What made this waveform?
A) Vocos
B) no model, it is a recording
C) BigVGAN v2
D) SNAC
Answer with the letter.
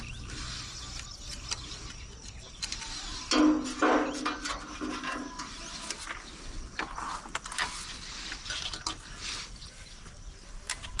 B